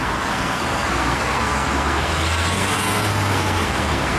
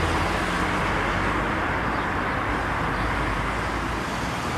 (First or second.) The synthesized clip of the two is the first